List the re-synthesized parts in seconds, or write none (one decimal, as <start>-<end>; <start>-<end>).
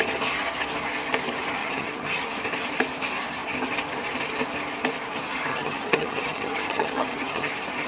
1.6-2.3; 5.5-7.5